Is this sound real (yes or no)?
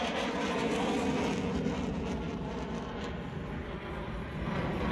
yes